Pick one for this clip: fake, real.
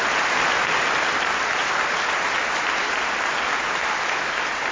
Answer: real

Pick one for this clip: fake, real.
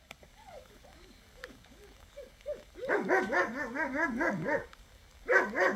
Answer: fake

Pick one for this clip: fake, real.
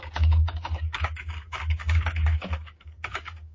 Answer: fake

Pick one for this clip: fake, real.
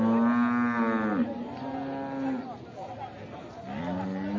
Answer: real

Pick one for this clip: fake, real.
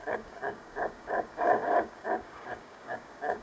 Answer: fake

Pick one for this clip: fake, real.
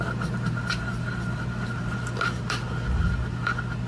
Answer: real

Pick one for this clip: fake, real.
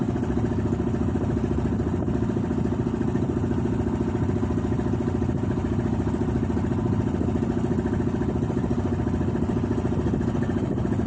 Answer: real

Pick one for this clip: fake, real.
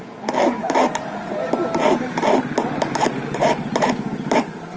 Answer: real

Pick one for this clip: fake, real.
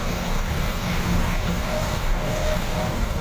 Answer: fake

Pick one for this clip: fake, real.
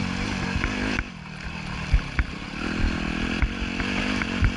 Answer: real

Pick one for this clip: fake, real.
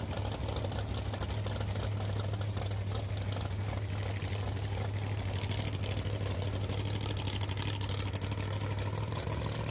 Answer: real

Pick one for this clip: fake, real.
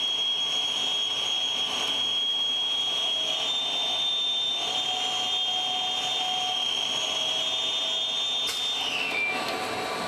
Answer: real